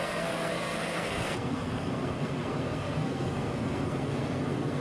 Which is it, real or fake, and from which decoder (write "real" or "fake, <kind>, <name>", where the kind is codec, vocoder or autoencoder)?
fake, codec, SNAC